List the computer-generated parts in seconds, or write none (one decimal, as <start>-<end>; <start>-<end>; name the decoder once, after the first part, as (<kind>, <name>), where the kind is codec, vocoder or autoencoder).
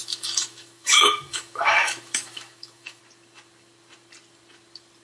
0.0-3.0 (autoencoder, DAC-VAE)